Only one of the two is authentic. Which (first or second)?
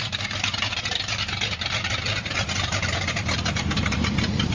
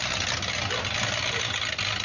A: second